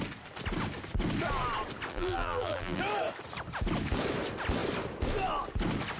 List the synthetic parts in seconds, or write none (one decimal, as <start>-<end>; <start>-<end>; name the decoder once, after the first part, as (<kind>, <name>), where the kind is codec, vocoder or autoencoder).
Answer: 1.9-2.8 (vocoder, BigVGAN v2)